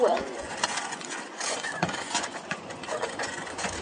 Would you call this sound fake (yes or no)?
yes